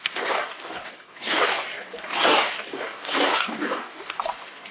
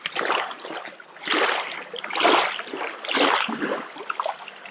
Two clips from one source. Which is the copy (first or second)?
first